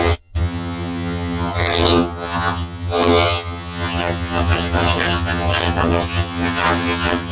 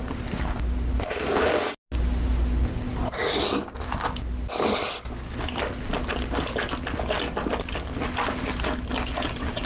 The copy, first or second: first